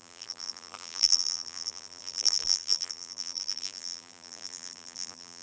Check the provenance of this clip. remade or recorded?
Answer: remade